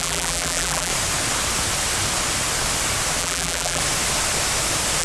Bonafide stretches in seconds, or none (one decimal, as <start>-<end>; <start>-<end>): 0.9-3.2; 3.8-5.0